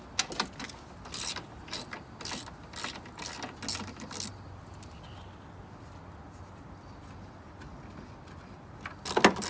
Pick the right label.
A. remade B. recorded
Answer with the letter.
B